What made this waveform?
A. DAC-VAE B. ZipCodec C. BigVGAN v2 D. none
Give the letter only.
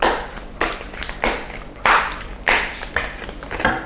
D